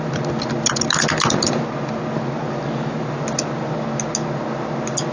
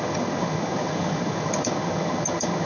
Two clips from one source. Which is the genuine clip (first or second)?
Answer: first